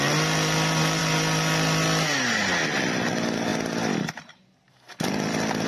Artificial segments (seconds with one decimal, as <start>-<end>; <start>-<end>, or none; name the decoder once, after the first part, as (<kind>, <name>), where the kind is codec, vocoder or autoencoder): none